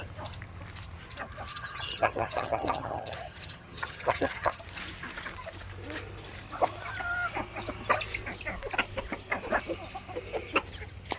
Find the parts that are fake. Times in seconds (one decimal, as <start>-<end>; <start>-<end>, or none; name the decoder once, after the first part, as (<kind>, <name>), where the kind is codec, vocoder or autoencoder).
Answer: 1.5-4.6 (vocoder, HiFi-GAN)